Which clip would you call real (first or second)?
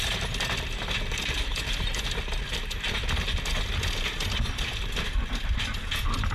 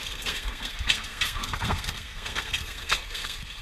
first